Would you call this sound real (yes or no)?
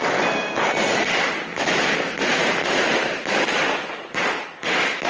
yes